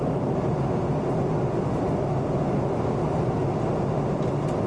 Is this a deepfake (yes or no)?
no